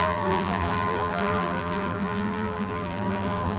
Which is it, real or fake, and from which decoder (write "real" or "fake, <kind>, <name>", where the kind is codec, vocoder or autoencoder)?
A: fake, vocoder, BigVGAN v2